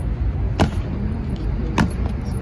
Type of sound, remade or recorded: recorded